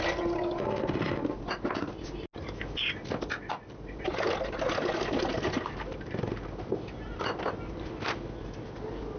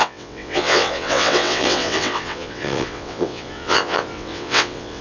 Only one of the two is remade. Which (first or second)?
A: second